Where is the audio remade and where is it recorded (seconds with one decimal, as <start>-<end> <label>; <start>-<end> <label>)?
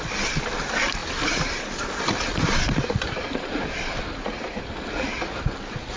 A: 0.0-1.0 recorded; 1.0-4.6 remade; 4.6-6.0 recorded